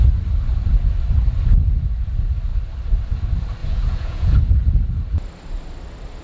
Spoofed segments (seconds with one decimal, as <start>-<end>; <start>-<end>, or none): 3.6-4.4

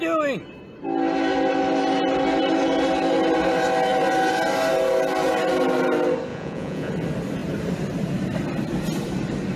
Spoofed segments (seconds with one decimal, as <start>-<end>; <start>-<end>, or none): 6.3-6.9